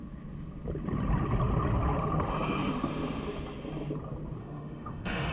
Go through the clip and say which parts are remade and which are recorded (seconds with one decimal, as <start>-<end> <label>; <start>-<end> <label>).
0.0-4.4 recorded; 4.4-5.3 remade